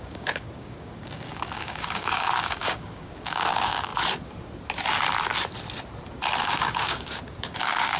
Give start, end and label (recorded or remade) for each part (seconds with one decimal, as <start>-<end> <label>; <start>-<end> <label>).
0.0-3.9 remade; 3.9-6.4 recorded; 6.4-8.0 remade